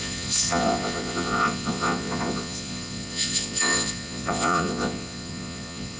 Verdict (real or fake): fake